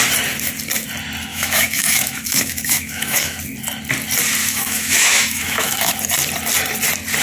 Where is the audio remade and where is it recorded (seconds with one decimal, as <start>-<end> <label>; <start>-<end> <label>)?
0.0-1.3 recorded; 1.3-3.4 remade; 3.4-4.4 recorded; 4.4-5.9 remade; 5.9-7.2 recorded